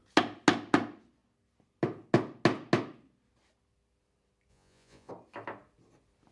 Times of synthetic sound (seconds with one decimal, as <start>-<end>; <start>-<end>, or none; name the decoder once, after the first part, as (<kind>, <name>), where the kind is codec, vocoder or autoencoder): 4.5-5.1 (vocoder, Vocos)